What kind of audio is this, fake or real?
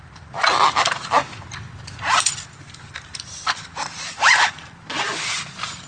fake